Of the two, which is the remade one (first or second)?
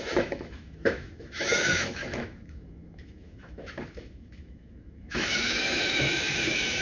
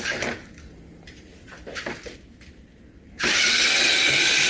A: first